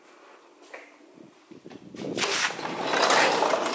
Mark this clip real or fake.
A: real